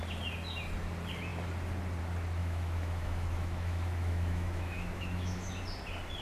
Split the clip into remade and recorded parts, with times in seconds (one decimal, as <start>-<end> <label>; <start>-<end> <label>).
0.0-2.4 recorded; 2.4-5.5 remade; 5.5-6.2 recorded